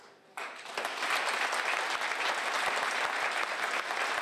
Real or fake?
real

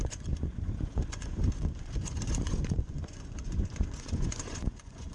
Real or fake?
fake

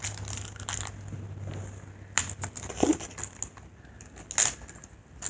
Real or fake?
real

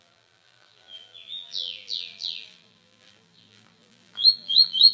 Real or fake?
fake